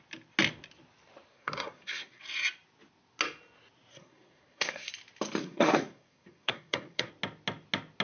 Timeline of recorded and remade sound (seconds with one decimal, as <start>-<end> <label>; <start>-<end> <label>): 0.0-1.3 recorded; 1.3-2.2 remade; 2.2-3.9 recorded; 3.9-4.9 remade; 4.9-5.4 recorded; 5.4-7.1 remade; 7.1-8.0 recorded